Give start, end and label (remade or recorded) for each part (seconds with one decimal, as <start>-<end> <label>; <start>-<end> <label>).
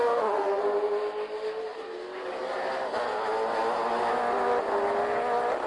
0.0-0.6 remade; 0.6-5.7 recorded